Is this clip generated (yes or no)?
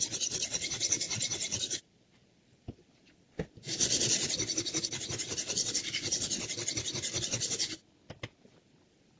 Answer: no